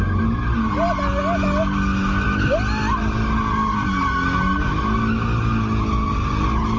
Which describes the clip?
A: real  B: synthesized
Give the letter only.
A